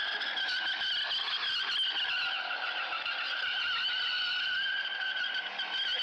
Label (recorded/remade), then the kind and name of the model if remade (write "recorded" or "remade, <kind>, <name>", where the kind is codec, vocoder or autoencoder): recorded